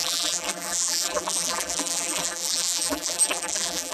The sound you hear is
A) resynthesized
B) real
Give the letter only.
A